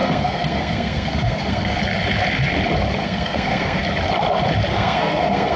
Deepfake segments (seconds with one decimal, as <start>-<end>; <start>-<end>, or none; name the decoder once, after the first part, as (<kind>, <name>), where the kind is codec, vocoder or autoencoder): 0.0-1.8 (codec, SNAC); 3.0-3.8; 4.7-5.6